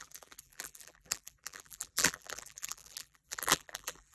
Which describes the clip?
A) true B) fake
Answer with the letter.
B